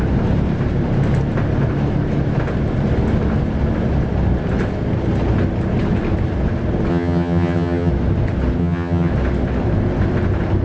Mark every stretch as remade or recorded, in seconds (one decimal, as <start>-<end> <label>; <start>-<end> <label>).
0.0-6.9 recorded; 6.9-7.9 remade; 7.9-8.6 recorded; 8.6-9.1 remade; 9.1-10.6 recorded